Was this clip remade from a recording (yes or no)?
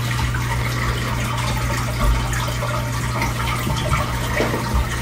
no